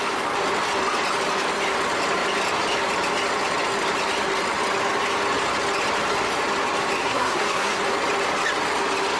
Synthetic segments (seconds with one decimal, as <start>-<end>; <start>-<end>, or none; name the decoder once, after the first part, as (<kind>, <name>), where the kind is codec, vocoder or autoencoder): 7.0-7.8 (codec, SNAC)